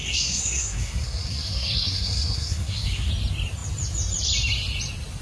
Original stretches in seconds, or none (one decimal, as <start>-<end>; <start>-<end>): 3.1-5.2